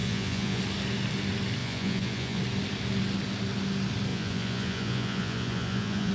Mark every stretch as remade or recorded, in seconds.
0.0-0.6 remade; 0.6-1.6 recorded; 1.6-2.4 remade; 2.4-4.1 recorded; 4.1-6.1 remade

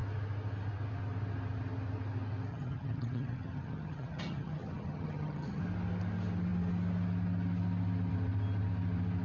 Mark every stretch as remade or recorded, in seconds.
0.0-2.5 recorded; 2.5-5.6 remade; 5.6-9.2 recorded

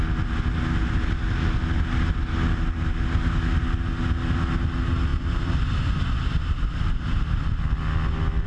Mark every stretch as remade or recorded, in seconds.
0.0-8.5 recorded

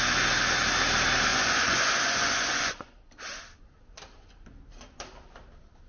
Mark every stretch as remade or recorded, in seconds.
0.0-1.3 recorded; 1.3-2.9 remade; 2.9-5.9 recorded

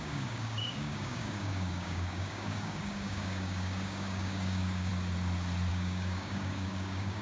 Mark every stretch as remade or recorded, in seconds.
0.0-4.9 remade; 4.9-5.7 recorded; 5.7-7.2 remade

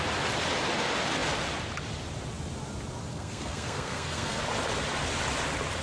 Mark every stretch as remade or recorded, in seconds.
0.0-3.1 recorded; 3.1-4.4 remade; 4.4-5.8 recorded

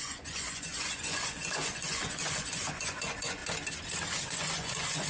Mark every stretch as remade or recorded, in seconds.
0.0-3.4 remade; 3.4-4.3 recorded; 4.3-5.1 remade

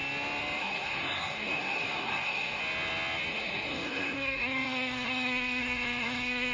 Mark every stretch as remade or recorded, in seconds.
0.0-0.6 recorded; 0.6-2.6 remade; 2.6-3.3 recorded; 3.3-6.5 remade